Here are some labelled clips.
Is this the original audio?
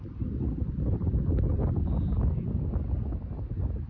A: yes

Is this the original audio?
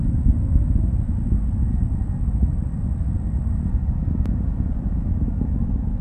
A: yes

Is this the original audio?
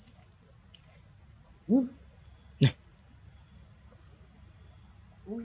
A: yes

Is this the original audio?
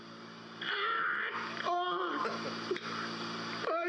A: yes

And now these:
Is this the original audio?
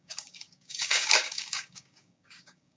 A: no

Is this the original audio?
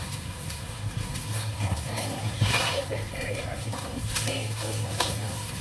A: no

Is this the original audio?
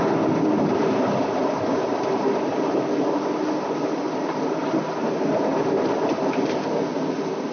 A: yes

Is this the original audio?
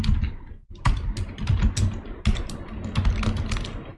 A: yes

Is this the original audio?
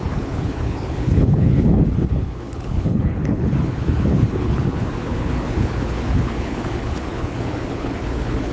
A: no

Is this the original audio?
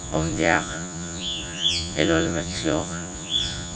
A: no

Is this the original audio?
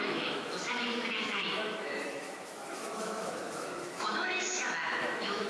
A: no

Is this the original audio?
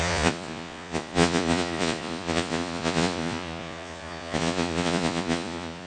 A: no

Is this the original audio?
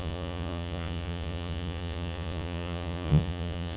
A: no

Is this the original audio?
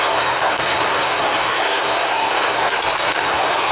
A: no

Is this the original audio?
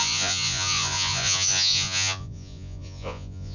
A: no